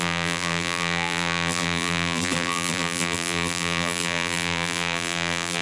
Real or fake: fake